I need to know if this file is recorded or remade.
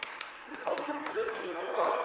remade